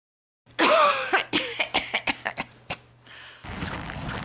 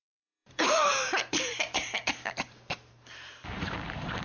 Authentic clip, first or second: first